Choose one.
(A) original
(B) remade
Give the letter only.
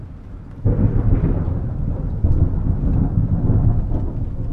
A